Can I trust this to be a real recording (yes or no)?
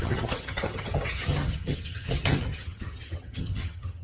no